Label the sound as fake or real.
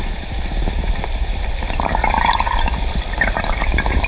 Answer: fake